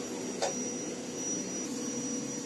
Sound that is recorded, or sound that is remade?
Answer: recorded